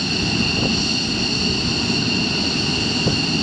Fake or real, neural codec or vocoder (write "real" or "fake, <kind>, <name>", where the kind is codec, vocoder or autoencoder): real